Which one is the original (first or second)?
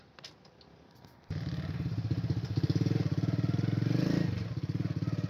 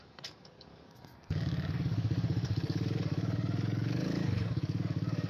first